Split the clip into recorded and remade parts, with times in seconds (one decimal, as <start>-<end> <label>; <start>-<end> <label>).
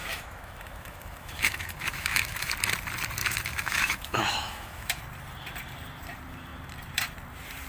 0.0-2.5 remade; 2.5-3.2 recorded; 3.2-5.0 remade; 5.0-7.7 recorded